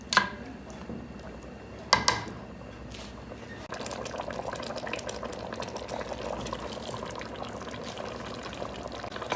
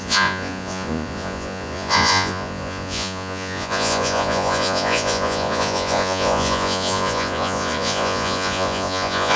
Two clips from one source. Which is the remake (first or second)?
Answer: second